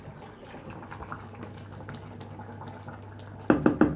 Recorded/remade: recorded